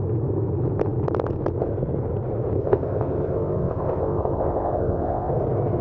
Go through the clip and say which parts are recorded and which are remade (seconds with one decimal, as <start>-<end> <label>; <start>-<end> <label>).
0.0-2.6 recorded; 2.6-5.3 remade; 5.3-5.8 recorded